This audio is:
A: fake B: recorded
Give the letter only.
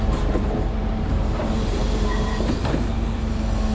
A